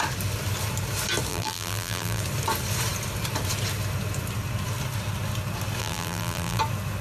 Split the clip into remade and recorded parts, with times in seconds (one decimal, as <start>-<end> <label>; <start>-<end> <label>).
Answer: 0.0-1.3 recorded; 1.3-2.2 remade; 2.2-5.8 recorded; 5.8-6.6 remade; 6.6-7.0 recorded